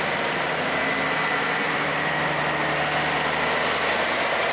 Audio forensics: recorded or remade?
recorded